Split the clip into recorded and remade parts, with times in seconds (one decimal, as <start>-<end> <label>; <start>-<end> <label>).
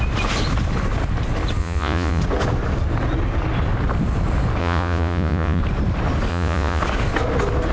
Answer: 0.0-1.6 recorded; 1.6-2.2 remade; 2.2-4.6 recorded; 4.6-5.6 remade; 5.6-6.3 recorded; 6.3-6.8 remade; 6.8-7.7 recorded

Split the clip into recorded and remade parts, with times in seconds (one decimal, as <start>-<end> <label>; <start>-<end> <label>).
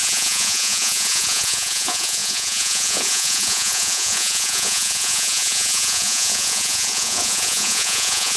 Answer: 0.0-8.4 remade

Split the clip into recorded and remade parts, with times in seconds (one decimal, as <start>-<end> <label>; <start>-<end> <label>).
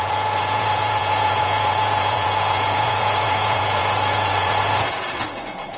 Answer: 0.0-5.8 remade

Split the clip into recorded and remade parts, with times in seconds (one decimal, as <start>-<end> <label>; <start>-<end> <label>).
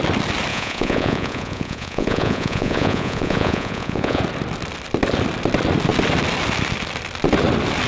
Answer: 0.0-0.5 recorded; 0.5-4.2 remade; 4.2-7.9 recorded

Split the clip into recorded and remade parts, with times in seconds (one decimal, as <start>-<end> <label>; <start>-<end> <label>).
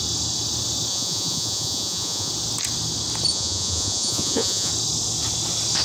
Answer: 0.0-0.9 recorded; 0.9-2.3 remade; 2.3-3.3 recorded; 3.3-4.7 remade; 4.7-5.8 recorded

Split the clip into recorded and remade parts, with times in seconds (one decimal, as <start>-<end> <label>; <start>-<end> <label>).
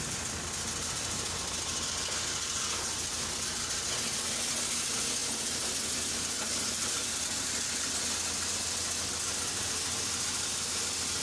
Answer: 0.0-11.2 recorded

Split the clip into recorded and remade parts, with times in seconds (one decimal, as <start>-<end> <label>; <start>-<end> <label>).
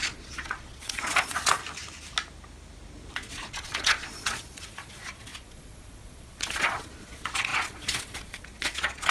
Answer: 0.0-1.6 remade; 1.6-3.1 recorded; 3.1-9.1 remade